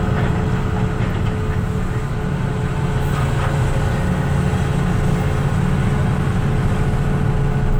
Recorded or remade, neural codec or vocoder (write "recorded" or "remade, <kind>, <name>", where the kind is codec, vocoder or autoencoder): recorded